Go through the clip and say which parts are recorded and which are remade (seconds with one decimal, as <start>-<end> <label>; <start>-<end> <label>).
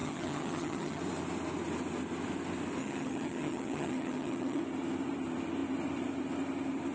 0.0-1.0 remade; 1.0-2.8 recorded; 2.8-4.6 remade; 4.6-6.9 recorded